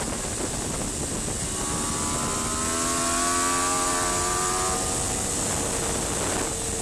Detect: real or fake real